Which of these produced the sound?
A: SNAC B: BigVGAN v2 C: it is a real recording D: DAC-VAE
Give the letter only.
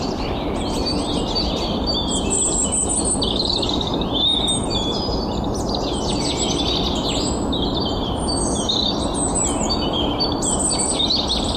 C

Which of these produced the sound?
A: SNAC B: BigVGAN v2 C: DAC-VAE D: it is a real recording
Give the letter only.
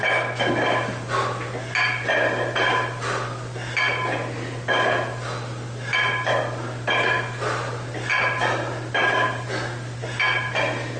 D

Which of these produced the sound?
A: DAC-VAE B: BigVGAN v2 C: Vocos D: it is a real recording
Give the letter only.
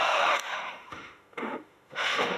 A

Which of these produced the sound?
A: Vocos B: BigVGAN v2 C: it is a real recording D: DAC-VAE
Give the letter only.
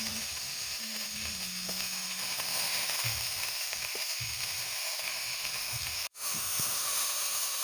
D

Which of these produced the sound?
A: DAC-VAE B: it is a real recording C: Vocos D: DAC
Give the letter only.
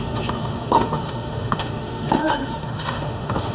A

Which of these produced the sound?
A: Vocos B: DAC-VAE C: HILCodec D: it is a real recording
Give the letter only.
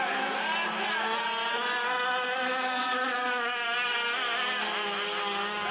D